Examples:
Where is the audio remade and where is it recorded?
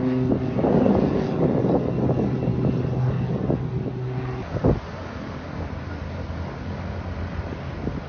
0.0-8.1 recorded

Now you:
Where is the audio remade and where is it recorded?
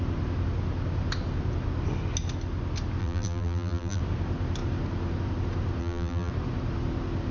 0.0-3.0 recorded; 3.0-4.0 remade; 4.0-5.8 recorded; 5.8-6.3 remade; 6.3-7.3 recorded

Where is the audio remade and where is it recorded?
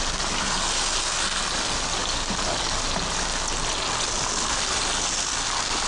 0.0-5.9 recorded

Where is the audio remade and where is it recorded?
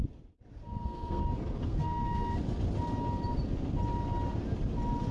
0.0-0.6 recorded; 0.6-1.2 remade; 1.2-1.7 recorded; 1.7-2.4 remade; 2.4-5.1 recorded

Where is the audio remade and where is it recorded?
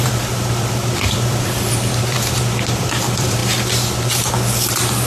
0.0-3.4 remade; 3.4-5.1 recorded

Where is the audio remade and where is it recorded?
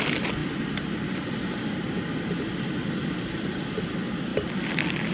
0.0-5.1 recorded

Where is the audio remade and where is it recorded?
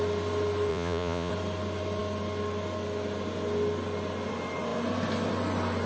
0.0-0.7 recorded; 0.7-1.3 remade; 1.3-5.9 recorded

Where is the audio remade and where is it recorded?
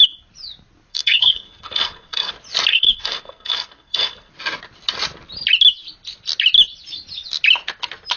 0.0-0.9 recorded; 0.9-2.3 remade; 2.3-2.7 recorded; 2.7-4.3 remade; 4.3-8.2 recorded